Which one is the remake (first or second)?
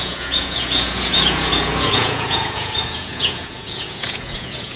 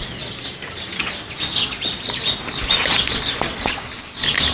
first